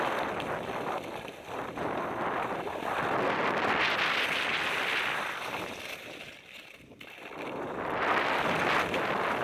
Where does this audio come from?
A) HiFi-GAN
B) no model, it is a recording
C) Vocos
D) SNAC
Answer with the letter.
B